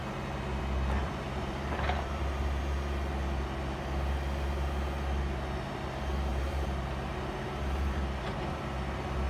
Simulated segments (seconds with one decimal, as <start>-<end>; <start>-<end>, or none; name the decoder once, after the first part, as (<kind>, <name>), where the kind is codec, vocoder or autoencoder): 1.0-2.6 (vocoder, BigVGAN v2); 6.3-8.5

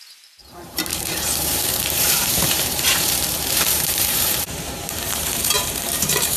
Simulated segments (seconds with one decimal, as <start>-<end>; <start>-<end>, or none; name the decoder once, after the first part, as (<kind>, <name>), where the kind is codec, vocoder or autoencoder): 0.0-6.4 (vocoder, BigVGAN v2)

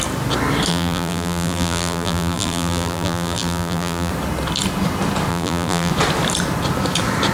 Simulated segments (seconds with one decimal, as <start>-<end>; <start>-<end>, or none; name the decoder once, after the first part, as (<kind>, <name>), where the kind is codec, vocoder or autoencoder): 0.7-4.1 (vocoder, BigVGAN v2); 5.3-5.9

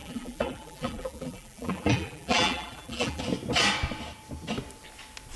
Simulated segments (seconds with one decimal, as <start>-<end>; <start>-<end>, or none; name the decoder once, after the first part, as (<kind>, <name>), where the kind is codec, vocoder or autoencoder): 0.0-3.2 (vocoder, BigVGAN v2)

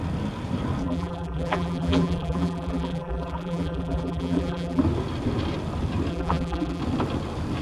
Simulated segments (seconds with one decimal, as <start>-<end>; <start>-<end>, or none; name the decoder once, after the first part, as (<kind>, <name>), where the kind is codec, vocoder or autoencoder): 0.8-4.8 (vocoder, BigVGAN v2); 6.1-6.8

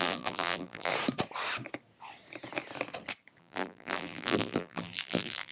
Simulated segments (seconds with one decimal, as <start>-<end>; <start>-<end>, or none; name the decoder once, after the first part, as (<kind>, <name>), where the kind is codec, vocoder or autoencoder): 0.0-0.9 (vocoder, BigVGAN v2); 3.4-5.5

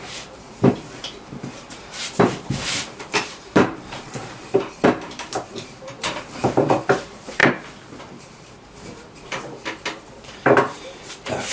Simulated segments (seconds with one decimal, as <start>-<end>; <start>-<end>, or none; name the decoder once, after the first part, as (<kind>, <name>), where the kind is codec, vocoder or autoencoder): 0.0-7.4 (vocoder, BigVGAN v2); 8.0-11.5